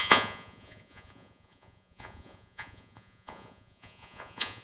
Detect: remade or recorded remade